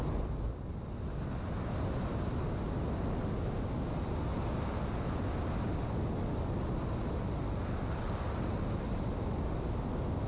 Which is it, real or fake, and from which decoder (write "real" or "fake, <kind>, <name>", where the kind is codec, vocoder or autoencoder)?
real